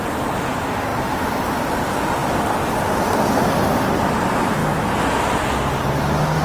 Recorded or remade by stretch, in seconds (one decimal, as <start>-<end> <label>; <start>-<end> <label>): 0.0-2.2 remade; 2.2-3.4 recorded; 3.4-4.6 remade; 4.6-6.4 recorded